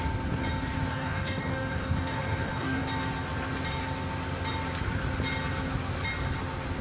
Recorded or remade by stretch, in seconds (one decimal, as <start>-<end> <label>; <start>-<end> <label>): 0.0-0.9 recorded; 0.9-2.9 remade; 2.9-6.8 recorded